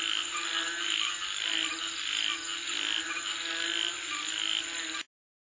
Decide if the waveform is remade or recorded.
recorded